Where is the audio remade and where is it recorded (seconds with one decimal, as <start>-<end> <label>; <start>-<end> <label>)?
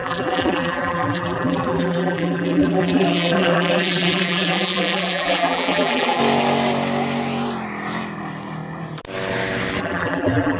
0.0-6.2 remade; 6.2-9.8 recorded; 9.8-10.6 remade